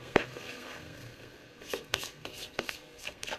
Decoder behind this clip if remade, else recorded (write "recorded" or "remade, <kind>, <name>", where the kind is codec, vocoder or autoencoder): remade, codec, SNAC